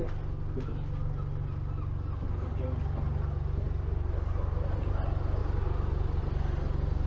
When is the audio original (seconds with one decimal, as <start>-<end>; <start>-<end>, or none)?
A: 0.0-7.1